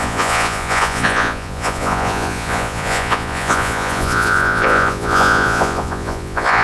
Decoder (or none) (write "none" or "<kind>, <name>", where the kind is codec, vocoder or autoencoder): vocoder, Vocos